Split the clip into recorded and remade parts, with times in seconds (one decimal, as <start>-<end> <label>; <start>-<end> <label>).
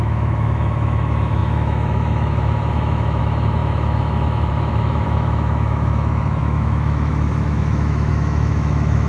0.0-9.1 remade